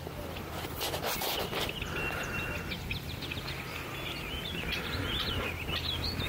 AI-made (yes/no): no